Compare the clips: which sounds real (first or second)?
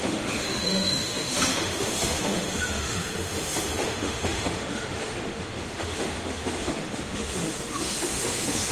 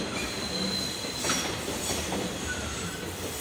second